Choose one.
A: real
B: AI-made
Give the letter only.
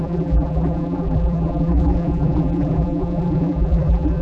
B